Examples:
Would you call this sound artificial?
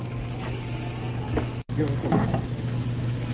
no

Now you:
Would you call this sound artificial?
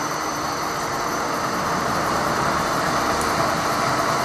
yes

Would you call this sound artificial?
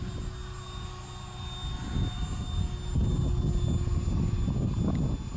no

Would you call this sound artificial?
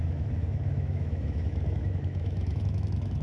yes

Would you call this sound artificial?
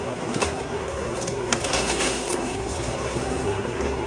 yes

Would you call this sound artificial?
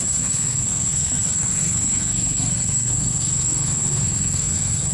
yes